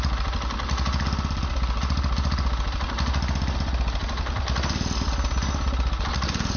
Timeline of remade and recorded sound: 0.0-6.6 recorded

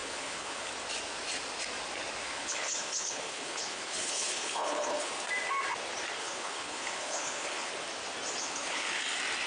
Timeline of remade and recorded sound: 0.0-0.7 remade; 0.7-2.2 recorded; 2.2-5.1 remade; 5.1-6.2 recorded; 6.2-7.7 remade; 7.7-8.4 recorded; 8.4-9.0 remade; 9.0-9.5 recorded

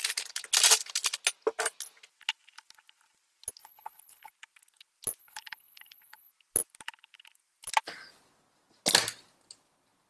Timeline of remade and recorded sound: 0.0-3.6 recorded; 3.6-4.3 remade; 4.3-5.2 recorded; 5.2-6.3 remade; 6.3-10.1 recorded